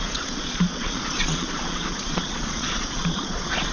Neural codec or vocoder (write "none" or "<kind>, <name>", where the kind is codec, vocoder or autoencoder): vocoder, Vocos